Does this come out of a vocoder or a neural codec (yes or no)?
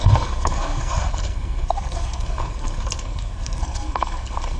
yes